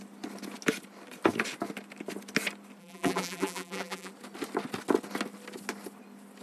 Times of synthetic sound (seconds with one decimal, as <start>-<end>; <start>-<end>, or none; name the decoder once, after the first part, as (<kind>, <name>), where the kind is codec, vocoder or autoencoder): 2.8-4.1 (vocoder, BigVGAN v2)